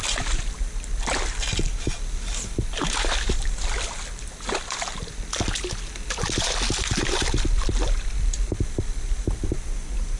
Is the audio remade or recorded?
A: recorded